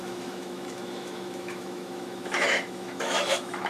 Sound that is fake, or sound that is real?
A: fake